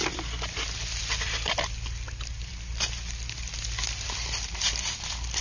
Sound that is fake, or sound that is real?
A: real